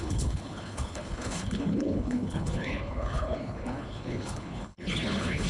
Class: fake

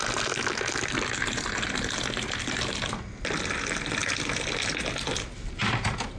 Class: real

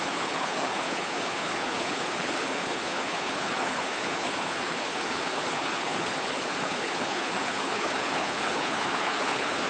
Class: fake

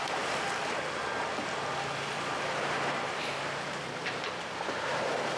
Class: real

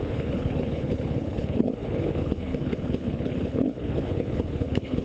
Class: fake